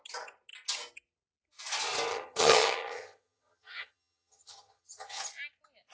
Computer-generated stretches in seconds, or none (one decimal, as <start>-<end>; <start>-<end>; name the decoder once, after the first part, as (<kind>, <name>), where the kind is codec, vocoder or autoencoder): 2.1-5.2 (vocoder, HiFi-GAN)